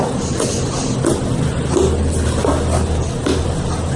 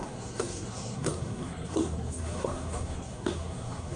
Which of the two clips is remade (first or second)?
second